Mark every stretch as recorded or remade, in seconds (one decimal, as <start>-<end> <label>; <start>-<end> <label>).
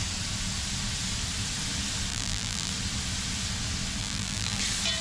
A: 0.0-2.1 recorded; 2.1-2.7 remade; 2.7-4.0 recorded; 4.0-4.6 remade; 4.6-5.0 recorded